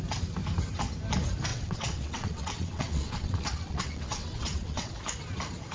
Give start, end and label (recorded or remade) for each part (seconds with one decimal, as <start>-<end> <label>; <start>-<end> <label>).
0.0-1.5 recorded; 1.5-4.9 remade; 4.9-5.7 recorded